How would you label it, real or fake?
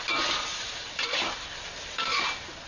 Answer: fake